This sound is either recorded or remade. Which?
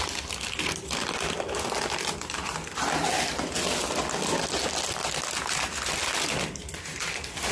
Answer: recorded